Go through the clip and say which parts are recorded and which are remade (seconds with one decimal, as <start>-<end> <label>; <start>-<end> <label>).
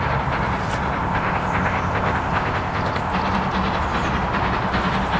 0.0-1.0 recorded; 1.0-3.1 remade; 3.1-5.2 recorded